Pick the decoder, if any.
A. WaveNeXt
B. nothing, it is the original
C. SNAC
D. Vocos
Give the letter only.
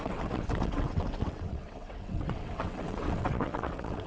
A